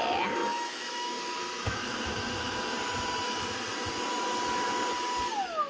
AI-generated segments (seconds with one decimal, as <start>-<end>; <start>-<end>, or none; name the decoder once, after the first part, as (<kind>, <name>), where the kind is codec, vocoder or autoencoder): 0.4-2.6 (autoencoder, DAC-VAE)